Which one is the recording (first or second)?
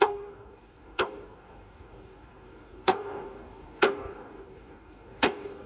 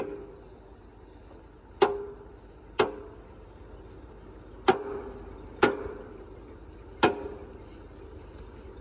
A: second